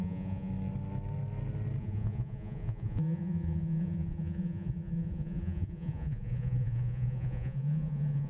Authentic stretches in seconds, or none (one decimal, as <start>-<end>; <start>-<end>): 0.5-1.8